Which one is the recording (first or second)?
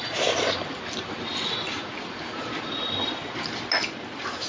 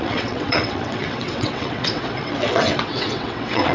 first